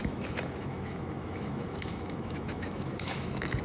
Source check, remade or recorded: remade